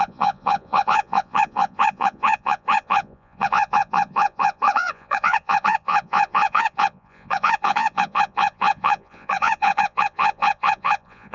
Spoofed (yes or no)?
yes